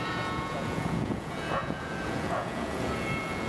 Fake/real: fake